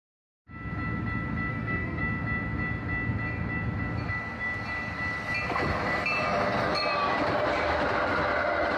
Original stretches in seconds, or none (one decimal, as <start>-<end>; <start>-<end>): 0.0-1.5; 2.0-8.8